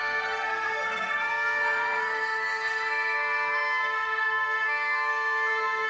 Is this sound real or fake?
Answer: fake